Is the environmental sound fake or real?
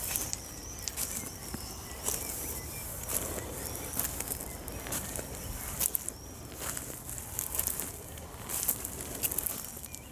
real